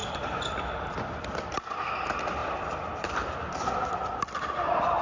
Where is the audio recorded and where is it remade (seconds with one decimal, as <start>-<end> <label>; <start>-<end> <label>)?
0.0-1.0 remade; 1.0-2.4 recorded; 2.4-3.9 remade; 3.9-5.0 recorded